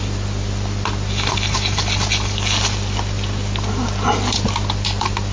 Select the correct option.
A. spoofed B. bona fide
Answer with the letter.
B